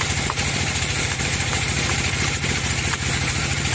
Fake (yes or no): yes